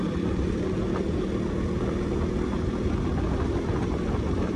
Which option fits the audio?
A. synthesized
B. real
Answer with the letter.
B